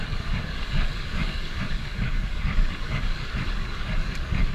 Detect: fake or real fake